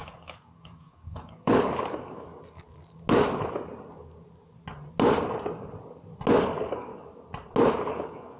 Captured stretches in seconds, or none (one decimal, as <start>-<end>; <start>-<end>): 2.3-6.4; 6.9-7.9